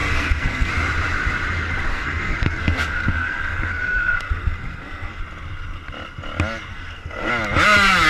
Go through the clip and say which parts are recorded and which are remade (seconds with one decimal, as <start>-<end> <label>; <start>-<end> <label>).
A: 0.0-0.7 remade; 0.7-1.9 recorded; 1.9-5.2 remade; 5.2-6.7 recorded; 6.7-7.3 remade; 7.3-8.1 recorded